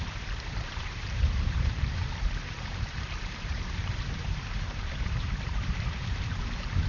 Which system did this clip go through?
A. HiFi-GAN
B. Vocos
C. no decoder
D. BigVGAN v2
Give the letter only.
D